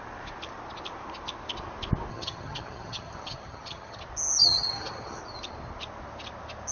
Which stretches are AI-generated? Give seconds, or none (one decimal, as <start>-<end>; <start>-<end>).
2.1-4.0; 4.4-5.2